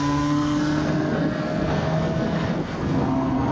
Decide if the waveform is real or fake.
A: fake